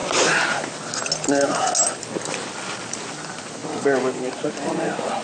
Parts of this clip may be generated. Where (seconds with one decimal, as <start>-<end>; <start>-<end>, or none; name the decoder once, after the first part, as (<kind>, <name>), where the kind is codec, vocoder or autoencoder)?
none